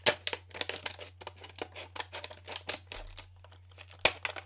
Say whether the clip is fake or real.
real